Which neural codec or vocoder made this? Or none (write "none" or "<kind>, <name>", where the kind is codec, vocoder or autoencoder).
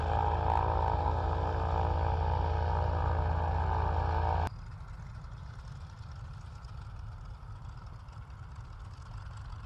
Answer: none